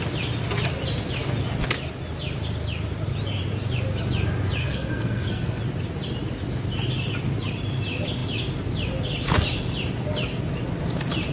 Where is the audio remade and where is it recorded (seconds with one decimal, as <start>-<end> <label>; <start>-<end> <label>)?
0.0-4.6 recorded; 4.6-5.6 remade; 5.6-11.3 recorded